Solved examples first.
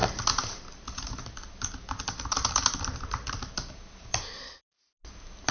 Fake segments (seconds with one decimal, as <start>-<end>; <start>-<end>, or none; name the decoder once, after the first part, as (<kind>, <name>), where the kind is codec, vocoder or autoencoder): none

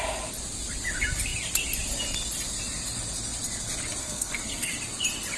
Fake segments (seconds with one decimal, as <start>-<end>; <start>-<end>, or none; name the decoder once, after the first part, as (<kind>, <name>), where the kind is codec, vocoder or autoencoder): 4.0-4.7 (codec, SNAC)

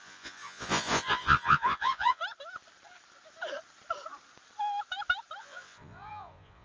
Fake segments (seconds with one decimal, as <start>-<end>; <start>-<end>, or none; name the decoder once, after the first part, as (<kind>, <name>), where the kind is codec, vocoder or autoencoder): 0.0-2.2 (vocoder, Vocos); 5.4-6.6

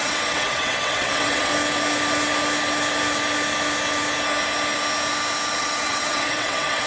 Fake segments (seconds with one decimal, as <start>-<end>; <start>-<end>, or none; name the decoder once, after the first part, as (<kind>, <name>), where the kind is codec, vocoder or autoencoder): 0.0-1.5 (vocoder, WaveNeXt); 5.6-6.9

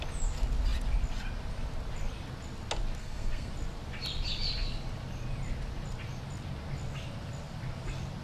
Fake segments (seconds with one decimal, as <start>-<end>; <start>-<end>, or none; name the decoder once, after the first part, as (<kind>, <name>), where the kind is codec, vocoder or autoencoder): 3.0-3.5 (codec, SNAC)

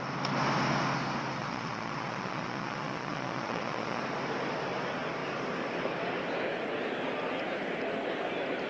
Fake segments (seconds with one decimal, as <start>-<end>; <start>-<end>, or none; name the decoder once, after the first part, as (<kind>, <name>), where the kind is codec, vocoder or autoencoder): 1.4-4.0 (vocoder, Vocos)